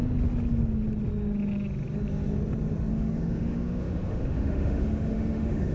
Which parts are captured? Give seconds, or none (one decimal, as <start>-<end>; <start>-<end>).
0.0-2.9